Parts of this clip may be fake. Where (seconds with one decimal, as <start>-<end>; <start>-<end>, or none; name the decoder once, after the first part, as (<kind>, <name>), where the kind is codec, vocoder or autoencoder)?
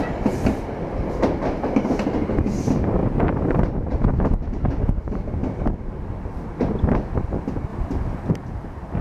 3.0-4.0 (vocoder, BigVGAN v2)